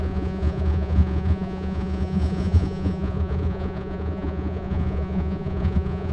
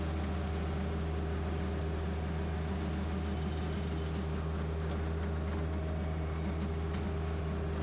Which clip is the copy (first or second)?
first